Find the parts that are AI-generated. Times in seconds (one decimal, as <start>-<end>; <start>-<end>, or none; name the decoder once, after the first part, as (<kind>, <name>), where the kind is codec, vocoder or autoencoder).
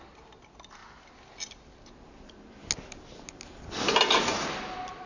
none